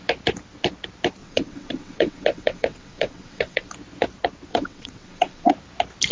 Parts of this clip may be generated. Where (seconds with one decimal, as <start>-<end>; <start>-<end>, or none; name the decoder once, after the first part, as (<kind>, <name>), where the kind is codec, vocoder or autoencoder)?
1.2-3.7 (vocoder, WaveNeXt); 4.5-5.5